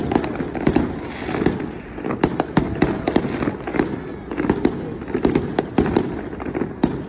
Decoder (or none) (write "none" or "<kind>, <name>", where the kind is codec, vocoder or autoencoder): none